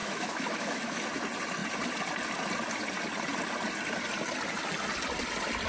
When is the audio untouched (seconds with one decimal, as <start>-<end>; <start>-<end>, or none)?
1.1-5.7